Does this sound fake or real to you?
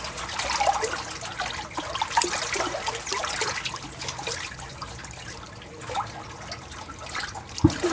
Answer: real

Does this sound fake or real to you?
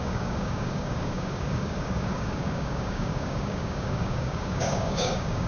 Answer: fake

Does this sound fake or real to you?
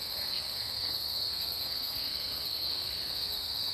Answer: fake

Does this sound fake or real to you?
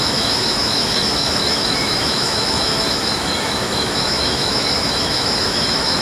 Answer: fake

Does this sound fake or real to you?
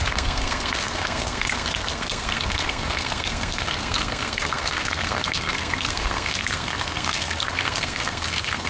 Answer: fake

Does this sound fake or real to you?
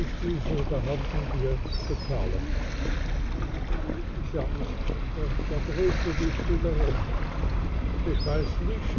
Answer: real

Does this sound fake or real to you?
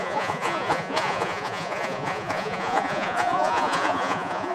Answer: fake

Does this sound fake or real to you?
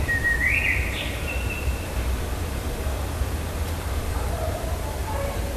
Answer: fake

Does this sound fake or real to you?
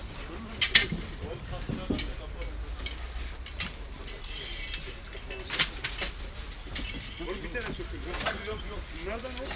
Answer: real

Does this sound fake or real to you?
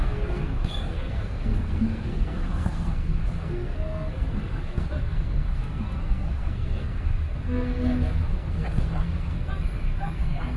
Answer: fake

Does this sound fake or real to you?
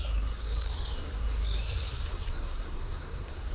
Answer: fake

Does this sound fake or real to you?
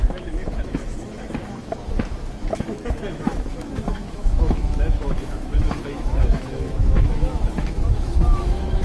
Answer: fake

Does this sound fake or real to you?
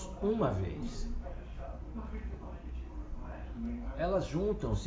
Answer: real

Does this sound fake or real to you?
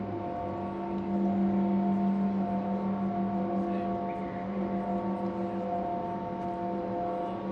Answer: real